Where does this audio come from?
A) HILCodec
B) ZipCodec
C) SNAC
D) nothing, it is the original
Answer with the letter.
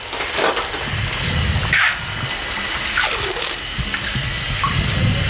D